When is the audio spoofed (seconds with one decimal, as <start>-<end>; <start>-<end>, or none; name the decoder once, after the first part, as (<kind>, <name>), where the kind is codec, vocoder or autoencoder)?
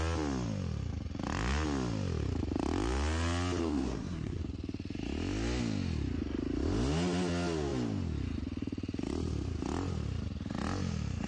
3.6-4.4 (codec, SNAC)